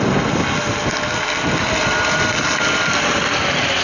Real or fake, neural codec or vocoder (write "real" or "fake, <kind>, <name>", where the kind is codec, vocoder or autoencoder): real